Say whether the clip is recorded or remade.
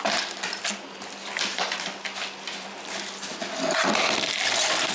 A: recorded